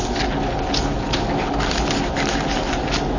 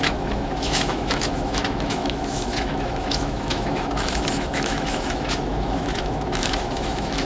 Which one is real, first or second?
first